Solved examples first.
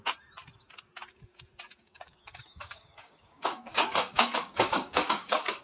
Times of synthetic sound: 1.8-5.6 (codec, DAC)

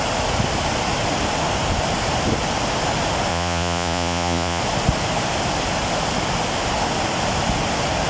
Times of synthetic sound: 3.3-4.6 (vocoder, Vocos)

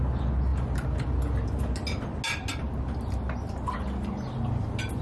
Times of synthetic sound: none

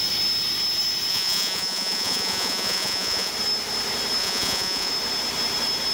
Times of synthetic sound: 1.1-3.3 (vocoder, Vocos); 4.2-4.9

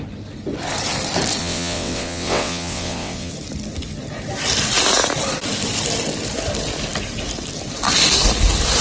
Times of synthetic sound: 1.4-3.3 (vocoder, WaveNeXt)